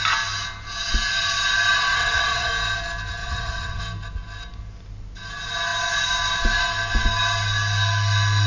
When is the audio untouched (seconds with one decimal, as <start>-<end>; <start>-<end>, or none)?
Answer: 0.0-1.9; 2.5-3.2; 3.8-8.5